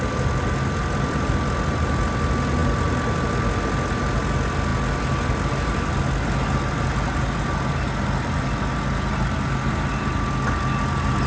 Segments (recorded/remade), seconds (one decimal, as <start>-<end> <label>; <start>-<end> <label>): 0.0-11.3 recorded